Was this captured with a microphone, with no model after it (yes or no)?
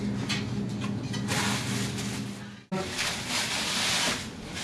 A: yes